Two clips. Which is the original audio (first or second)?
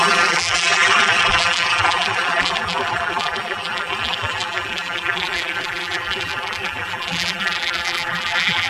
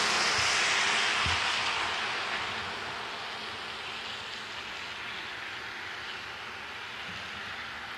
second